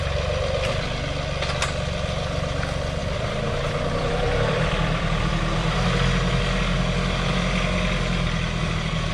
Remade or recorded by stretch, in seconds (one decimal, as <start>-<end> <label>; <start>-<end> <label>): 0.0-3.0 recorded; 3.0-6.3 remade; 6.3-9.1 recorded